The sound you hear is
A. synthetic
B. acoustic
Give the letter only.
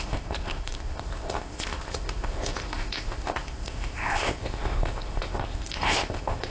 A